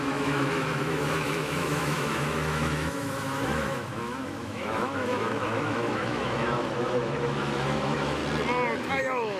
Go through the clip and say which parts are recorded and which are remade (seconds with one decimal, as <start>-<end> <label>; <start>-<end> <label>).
0.0-8.2 remade; 8.2-8.8 recorded; 8.8-9.4 remade